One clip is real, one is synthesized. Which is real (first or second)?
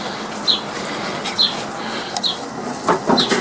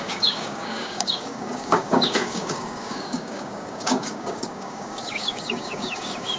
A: first